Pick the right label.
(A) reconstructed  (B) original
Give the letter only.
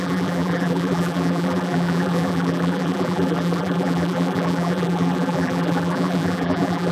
A